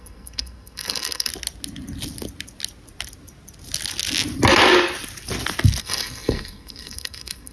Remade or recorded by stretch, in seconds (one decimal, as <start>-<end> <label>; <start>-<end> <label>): 0.0-1.3 remade; 1.3-5.8 recorded; 5.8-7.5 remade